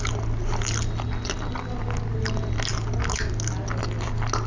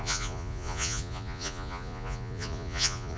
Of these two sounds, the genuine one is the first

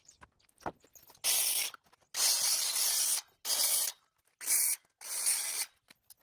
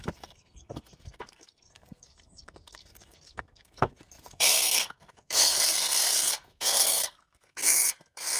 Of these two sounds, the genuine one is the first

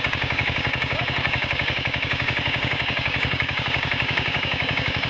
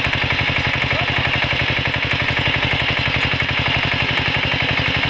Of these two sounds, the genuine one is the second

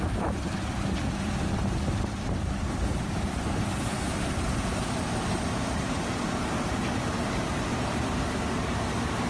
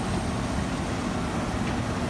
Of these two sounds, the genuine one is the second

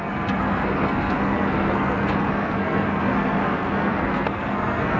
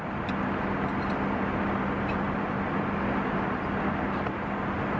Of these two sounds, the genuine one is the second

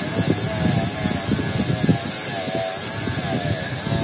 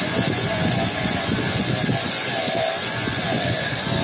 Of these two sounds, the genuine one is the first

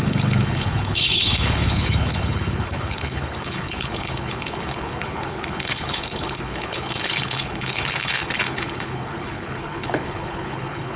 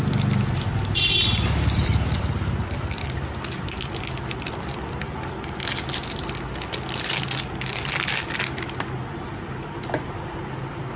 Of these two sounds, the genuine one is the second